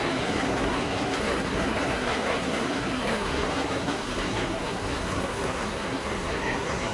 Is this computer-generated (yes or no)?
yes